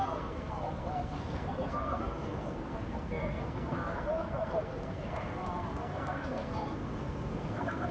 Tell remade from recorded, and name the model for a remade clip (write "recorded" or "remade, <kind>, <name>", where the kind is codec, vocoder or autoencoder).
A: remade, codec, SNAC